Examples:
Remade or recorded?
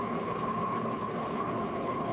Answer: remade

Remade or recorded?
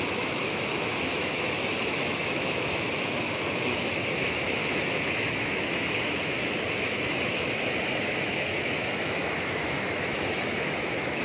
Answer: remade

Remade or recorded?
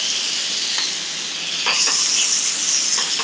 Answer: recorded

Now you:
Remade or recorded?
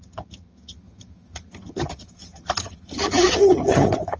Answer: remade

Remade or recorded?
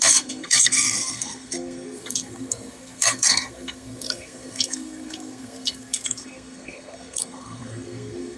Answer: remade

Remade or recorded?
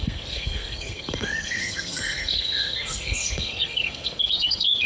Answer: remade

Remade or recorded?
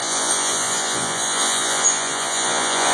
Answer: remade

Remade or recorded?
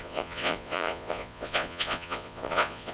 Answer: remade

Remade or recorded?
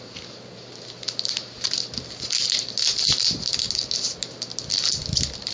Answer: recorded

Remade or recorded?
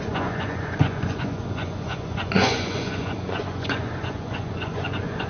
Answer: remade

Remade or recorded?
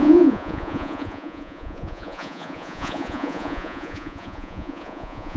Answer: remade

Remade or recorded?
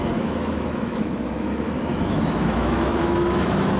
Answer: remade